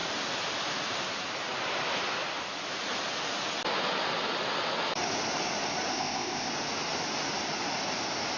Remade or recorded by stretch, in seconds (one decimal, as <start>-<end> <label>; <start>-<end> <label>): 0.0-5.9 recorded; 5.9-6.5 remade; 6.5-8.4 recorded